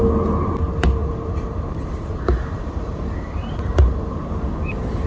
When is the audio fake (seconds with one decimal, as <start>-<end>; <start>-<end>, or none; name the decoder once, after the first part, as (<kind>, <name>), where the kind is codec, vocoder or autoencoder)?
1.0-4.1 (vocoder, BigVGAN v2)